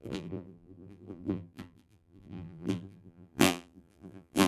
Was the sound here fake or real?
fake